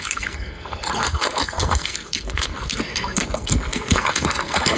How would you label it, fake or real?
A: fake